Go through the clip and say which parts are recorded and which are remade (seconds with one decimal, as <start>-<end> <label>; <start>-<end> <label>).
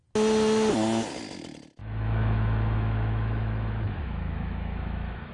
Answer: 0.0-1.8 recorded; 1.8-5.3 remade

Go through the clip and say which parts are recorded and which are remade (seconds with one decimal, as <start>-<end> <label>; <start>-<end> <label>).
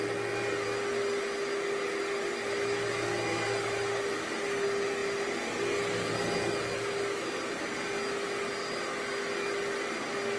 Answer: 0.0-10.4 recorded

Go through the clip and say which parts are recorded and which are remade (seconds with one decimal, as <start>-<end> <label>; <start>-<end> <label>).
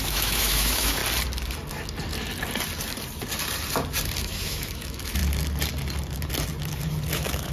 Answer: 0.0-1.0 remade; 1.0-4.2 recorded; 4.2-5.2 remade; 5.2-7.1 recorded; 7.1-7.5 remade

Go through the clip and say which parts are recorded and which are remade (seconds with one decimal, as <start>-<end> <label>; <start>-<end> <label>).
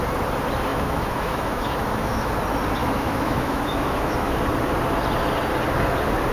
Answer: 0.0-0.7 recorded; 0.7-2.3 remade; 2.3-2.8 recorded; 2.8-4.4 remade; 4.4-6.3 recorded